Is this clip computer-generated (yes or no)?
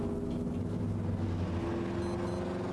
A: no